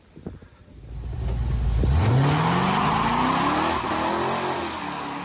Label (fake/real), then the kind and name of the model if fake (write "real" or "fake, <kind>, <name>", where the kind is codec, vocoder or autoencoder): real